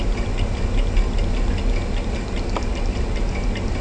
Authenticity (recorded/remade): recorded